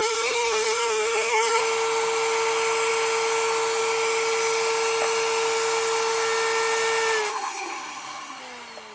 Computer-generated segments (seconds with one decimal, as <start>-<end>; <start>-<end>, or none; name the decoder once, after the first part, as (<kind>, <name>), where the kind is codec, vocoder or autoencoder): 0.0-1.6 (codec, SNAC); 7.3-8.4